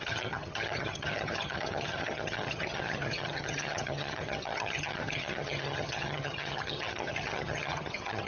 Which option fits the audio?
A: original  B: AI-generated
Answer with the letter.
B